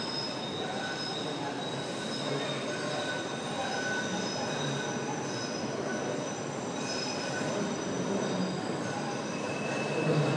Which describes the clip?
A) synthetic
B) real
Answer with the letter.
B